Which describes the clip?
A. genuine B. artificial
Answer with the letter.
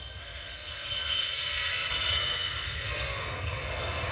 B